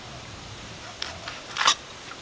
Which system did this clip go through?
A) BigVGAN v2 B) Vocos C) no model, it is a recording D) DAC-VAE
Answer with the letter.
C